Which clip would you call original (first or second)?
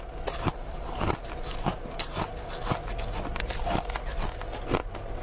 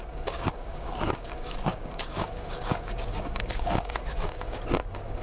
first